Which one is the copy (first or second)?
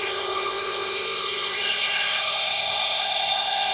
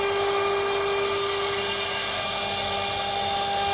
first